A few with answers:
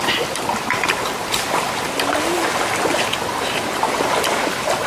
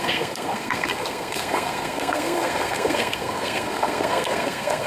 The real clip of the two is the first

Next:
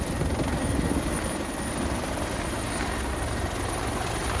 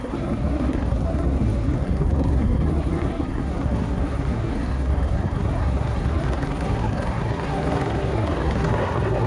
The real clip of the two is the first